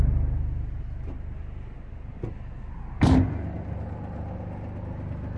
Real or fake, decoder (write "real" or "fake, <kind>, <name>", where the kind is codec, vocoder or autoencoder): real